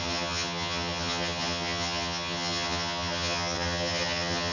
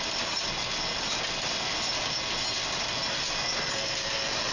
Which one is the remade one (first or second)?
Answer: first